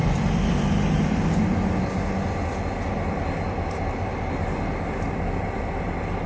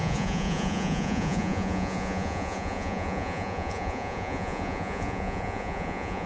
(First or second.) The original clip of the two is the first